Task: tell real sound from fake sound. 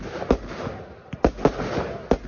real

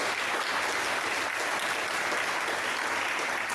real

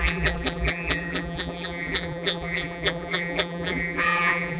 fake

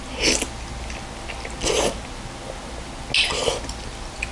real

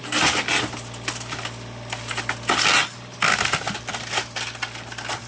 real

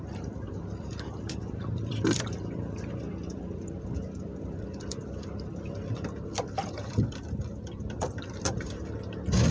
fake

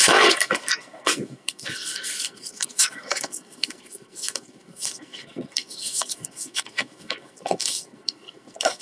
fake